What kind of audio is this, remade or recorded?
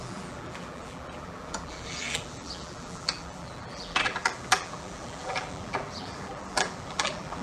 remade